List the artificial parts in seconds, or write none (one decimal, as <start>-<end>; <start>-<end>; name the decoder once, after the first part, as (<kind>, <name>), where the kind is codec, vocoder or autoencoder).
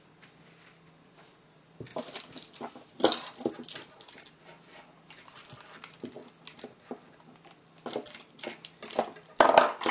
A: none